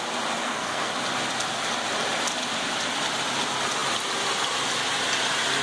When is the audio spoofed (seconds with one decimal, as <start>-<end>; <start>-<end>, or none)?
0.4-0.9